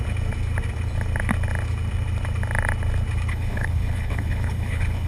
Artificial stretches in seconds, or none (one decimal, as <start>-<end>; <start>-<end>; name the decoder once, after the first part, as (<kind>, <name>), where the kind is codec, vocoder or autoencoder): 3.3-5.1 (codec, HILCodec)